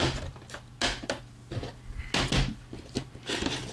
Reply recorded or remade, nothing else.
recorded